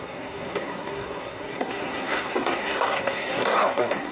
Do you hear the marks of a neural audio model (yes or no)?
yes